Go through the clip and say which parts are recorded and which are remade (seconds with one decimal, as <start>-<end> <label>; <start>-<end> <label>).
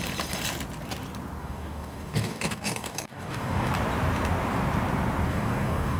0.0-1.4 recorded; 1.4-3.7 remade; 3.7-5.3 recorded; 5.3-6.0 remade